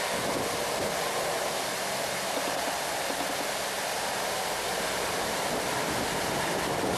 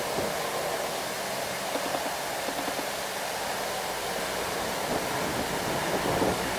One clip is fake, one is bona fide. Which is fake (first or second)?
first